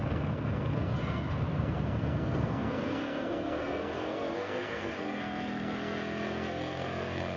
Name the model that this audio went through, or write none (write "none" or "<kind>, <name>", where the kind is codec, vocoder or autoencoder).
codec, SNAC